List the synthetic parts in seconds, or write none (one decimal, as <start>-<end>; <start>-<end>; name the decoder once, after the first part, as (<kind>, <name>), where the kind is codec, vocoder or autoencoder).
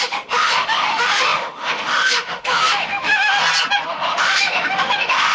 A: 0.0-3.4 (autoencoder, DAC-VAE); 3.9-5.3